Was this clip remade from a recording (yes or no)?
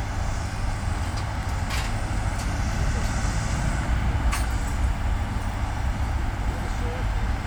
no